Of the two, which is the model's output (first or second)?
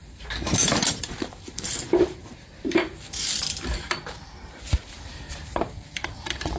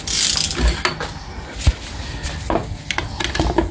first